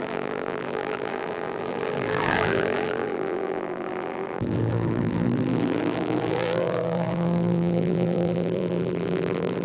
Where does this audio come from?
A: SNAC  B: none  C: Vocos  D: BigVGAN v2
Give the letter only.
D